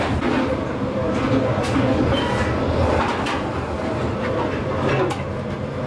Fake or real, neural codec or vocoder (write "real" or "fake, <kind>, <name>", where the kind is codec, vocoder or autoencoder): real